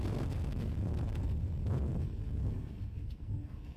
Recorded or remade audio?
remade